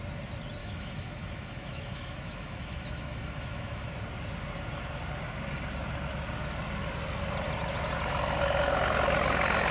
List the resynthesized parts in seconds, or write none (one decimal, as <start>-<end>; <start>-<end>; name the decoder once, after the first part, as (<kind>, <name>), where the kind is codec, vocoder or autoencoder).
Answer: 0.6-3.9 (autoencoder, DAC-VAE)